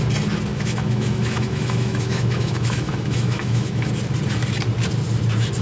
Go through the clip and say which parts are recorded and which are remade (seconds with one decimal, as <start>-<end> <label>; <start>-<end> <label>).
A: 0.0-0.5 recorded; 0.5-3.9 remade; 3.9-5.6 recorded